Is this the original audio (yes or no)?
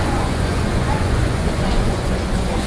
no